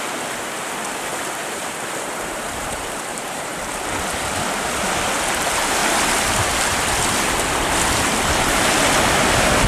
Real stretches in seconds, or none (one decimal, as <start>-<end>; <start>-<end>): 0.0-1.1; 3.6-9.7